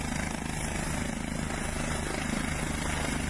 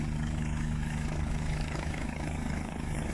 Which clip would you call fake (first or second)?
second